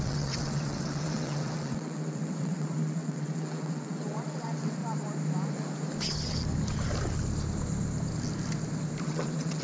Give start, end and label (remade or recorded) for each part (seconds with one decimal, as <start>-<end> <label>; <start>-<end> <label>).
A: 0.0-4.8 remade; 4.8-9.0 recorded; 9.0-9.6 remade